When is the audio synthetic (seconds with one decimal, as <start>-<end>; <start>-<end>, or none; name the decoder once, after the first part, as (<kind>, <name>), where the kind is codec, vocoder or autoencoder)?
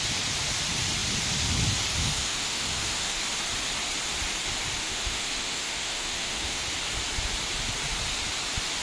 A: 2.0-3.2 (autoencoder, DAC-VAE); 4.8-6.6